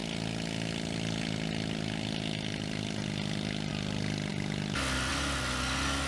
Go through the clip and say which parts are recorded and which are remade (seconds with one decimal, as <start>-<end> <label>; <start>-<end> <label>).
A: 0.0-6.1 recorded